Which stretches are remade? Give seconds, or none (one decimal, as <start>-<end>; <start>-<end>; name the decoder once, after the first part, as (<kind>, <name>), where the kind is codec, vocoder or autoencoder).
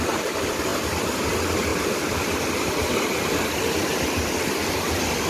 0.7-1.2 (vocoder, BigVGAN v2)